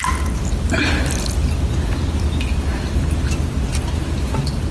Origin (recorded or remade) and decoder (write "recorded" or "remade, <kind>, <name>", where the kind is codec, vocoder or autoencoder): recorded